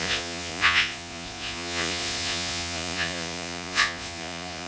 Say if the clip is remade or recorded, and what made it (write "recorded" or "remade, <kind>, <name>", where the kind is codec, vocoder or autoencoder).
remade, vocoder, Vocos